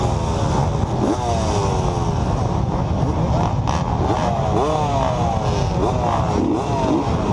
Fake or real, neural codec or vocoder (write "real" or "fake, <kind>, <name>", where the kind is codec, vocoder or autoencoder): real